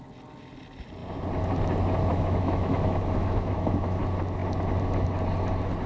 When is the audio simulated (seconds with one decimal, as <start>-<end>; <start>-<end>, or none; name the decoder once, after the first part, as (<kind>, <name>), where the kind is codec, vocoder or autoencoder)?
2.1-4.0 (autoencoder, DAC-VAE)